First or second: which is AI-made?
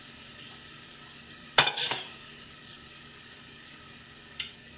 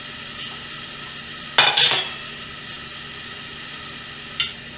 first